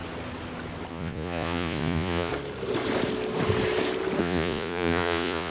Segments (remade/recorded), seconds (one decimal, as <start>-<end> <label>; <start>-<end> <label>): 0.0-0.9 recorded; 0.9-2.3 remade; 2.3-4.2 recorded; 4.2-5.5 remade